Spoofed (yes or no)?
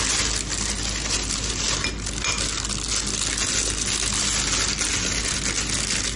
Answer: no